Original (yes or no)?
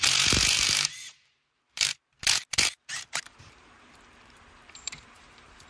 no